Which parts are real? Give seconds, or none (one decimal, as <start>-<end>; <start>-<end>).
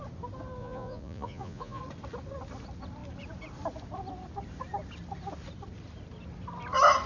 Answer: 0.0-0.6; 1.8-7.1